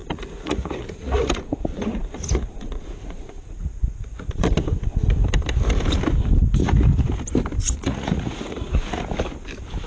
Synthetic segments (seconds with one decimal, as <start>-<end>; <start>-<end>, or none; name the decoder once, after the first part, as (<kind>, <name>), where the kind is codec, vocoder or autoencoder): 0.0-4.3 (vocoder, Vocos); 6.6-7.1; 7.6-9.1